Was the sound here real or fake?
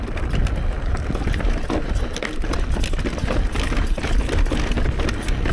real